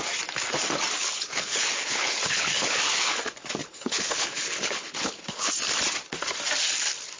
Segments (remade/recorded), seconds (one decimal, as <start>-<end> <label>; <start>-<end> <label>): 0.0-1.0 recorded; 1.0-3.2 remade; 3.2-3.6 recorded; 3.6-5.5 remade; 5.5-7.2 recorded